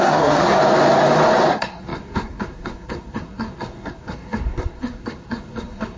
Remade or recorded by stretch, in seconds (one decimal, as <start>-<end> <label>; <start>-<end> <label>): 0.0-0.6 remade; 0.6-1.5 recorded; 1.5-6.0 remade